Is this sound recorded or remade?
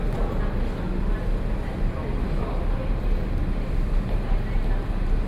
recorded